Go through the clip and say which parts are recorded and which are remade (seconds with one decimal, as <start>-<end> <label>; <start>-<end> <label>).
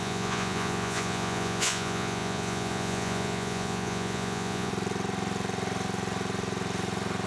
0.0-4.7 remade; 4.7-7.3 recorded